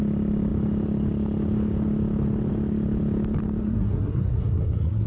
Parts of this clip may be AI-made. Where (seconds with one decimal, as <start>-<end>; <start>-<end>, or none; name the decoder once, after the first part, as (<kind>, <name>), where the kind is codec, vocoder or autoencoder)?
3.6-5.1 (codec, SNAC)